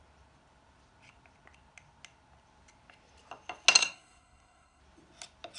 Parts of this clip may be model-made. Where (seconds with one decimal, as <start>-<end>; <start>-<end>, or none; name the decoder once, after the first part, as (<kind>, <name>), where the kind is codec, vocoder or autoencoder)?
3.8-4.8 (codec, SNAC)